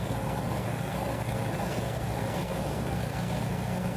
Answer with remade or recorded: remade